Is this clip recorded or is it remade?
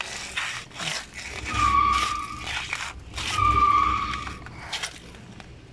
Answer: recorded